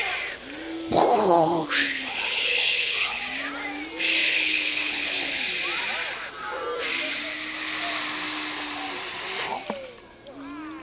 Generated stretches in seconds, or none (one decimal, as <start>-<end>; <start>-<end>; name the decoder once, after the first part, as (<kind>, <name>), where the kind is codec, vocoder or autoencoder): 1.1-3.2 (codec, HILCodec); 4.2-5.4